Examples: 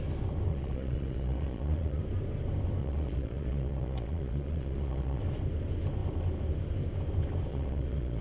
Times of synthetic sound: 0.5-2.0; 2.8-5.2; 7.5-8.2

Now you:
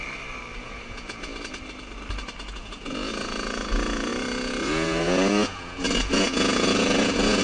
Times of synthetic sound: 0.6-1.3; 2.5-7.4

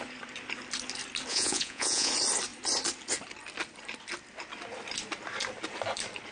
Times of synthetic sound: 1.3-2.1

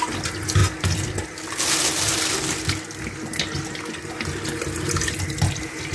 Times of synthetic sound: none

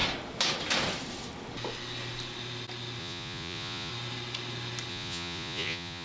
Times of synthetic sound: 3.0-3.9; 4.9-6.0

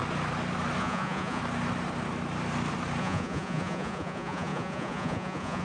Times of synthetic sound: 0.8-1.4; 3.0-5.6

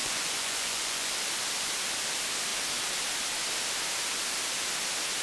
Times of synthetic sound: 0.0-1.1

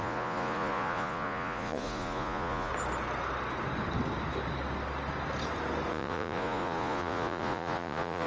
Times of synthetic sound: 0.0-2.7; 5.9-8.3